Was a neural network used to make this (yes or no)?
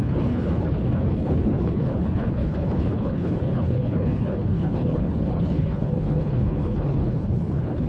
yes